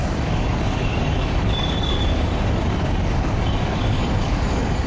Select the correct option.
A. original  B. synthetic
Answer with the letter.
B